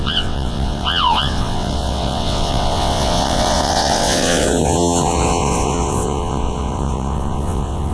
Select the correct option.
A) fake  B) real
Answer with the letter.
A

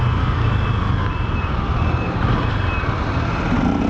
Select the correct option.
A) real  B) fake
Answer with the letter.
A